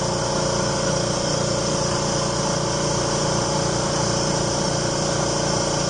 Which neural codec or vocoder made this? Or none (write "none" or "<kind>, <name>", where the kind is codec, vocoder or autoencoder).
none